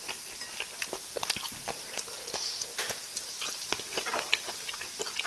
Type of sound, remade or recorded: recorded